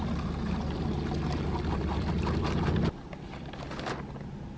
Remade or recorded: recorded